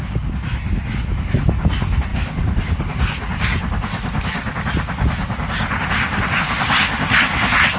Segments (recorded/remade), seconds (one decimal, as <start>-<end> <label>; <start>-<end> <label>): 0.0-7.8 recorded